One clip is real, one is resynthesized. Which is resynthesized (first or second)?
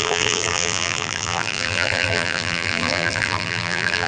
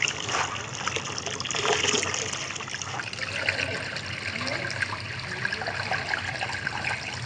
first